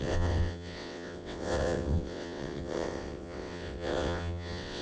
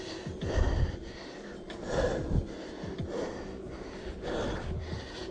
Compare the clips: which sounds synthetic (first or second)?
first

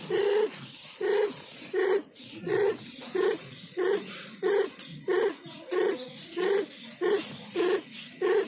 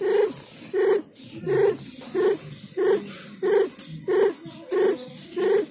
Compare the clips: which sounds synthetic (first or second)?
first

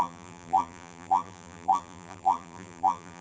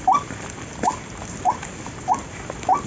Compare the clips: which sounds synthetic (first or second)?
first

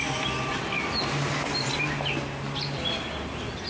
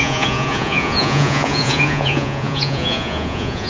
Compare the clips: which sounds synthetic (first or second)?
second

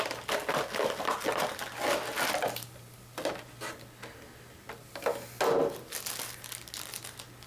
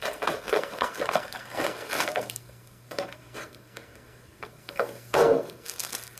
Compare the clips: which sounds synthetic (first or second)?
second